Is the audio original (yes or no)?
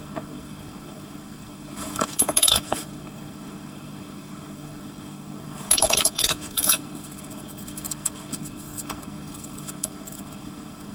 no